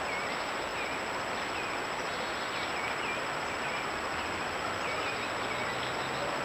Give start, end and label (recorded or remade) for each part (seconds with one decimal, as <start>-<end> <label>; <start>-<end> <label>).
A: 0.0-6.4 recorded